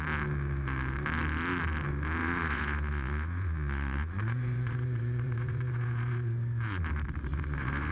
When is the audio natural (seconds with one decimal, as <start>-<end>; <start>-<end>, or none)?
0.0-2.2; 6.8-7.3